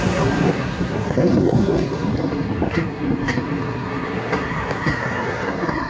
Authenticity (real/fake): fake